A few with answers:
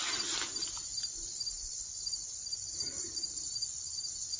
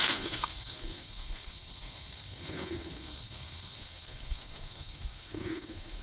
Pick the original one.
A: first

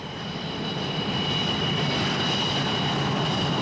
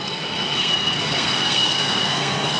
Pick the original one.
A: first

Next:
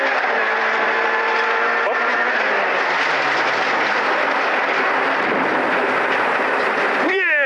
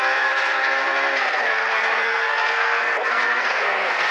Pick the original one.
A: first